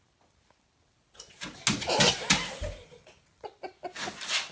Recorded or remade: recorded